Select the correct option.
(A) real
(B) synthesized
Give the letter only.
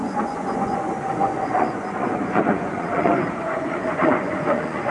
B